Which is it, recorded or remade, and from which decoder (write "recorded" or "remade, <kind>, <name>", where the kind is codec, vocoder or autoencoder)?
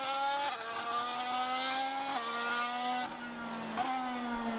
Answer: recorded